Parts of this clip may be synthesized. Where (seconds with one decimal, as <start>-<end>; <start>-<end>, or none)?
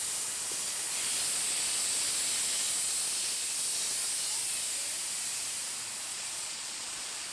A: 6.1-7.3